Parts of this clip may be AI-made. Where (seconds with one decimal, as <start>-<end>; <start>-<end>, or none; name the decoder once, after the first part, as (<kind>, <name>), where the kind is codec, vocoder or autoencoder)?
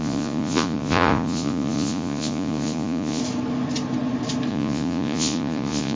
0.0-3.2 (vocoder, Vocos); 4.5-6.0